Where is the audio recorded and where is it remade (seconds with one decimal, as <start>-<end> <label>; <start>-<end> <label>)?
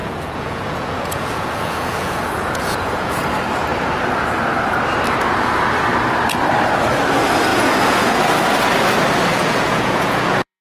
0.0-3.2 remade; 3.2-7.5 recorded; 7.5-8.2 remade; 8.2-9.3 recorded; 9.3-10.6 remade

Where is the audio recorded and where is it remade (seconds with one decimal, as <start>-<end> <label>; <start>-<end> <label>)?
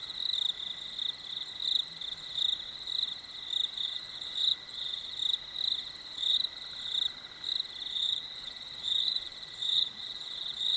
0.0-3.8 recorded; 3.8-5.1 remade; 5.1-7.9 recorded; 7.9-10.8 remade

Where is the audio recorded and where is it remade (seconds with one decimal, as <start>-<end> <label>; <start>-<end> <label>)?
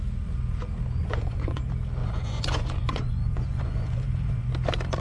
0.0-1.0 recorded; 1.0-1.6 remade; 1.6-2.0 recorded; 2.0-4.5 remade; 4.5-5.0 recorded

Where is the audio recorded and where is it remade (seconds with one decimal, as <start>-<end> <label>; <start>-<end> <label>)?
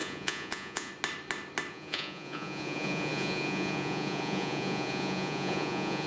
0.0-0.9 remade; 0.9-1.7 recorded; 1.7-6.1 remade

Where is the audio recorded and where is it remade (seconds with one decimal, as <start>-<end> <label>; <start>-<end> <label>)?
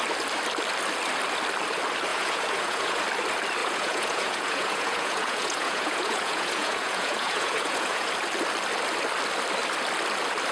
0.0-2.1 recorded; 2.1-3.0 remade; 3.0-3.6 recorded; 3.6-8.1 remade; 8.1-10.5 recorded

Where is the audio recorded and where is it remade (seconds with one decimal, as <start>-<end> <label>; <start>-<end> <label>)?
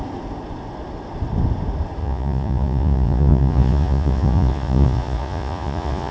0.0-2.0 recorded; 2.0-6.1 remade